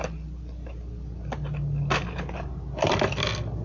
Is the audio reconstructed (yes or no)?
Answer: no